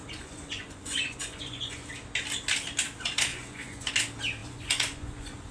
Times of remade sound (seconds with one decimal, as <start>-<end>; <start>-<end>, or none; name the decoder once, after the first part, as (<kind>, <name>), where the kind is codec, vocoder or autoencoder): 0.0-1.9 (vocoder, Vocos); 3.3-3.9; 4.4-5.5